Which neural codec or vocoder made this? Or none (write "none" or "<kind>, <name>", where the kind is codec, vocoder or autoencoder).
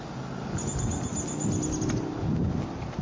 none